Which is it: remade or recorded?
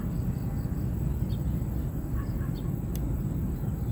recorded